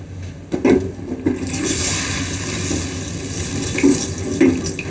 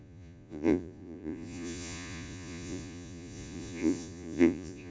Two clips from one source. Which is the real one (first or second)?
first